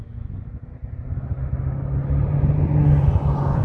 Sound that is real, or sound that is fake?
real